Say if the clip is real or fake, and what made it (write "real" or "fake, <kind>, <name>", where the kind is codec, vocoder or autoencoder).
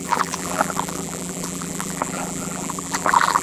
fake, vocoder, BigVGAN v2